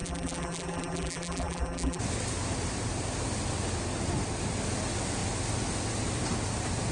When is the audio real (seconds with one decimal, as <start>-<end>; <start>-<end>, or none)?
2.0-6.9